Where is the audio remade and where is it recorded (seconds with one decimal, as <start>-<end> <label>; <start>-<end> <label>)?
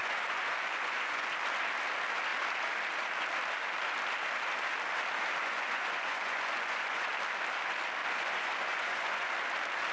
0.0-1.3 remade; 1.3-5.4 recorded; 5.4-7.1 remade; 7.1-8.0 recorded; 8.0-9.3 remade; 9.3-9.9 recorded